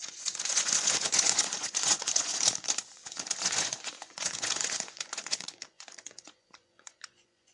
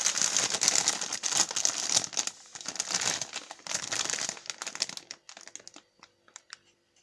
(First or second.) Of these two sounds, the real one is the second